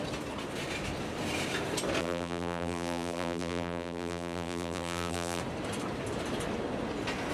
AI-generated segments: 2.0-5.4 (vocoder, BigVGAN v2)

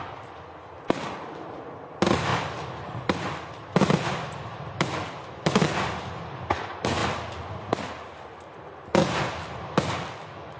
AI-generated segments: 0.0-2.3 (vocoder, BigVGAN v2); 6.2-7.0

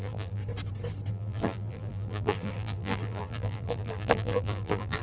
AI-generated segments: 0.0-0.4 (vocoder, BigVGAN v2); 1.1-5.0

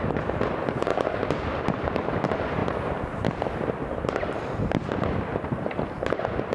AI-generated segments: 0.0-0.9 (vocoder, BigVGAN v2); 1.6-6.5

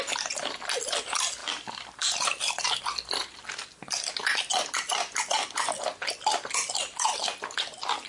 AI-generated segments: 1.4-2.8 (vocoder, BigVGAN v2)

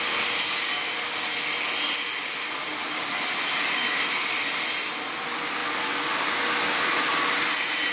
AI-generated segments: 2.8-3.7 (vocoder, BigVGAN v2)